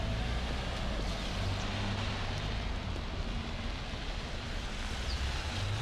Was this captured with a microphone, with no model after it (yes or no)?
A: yes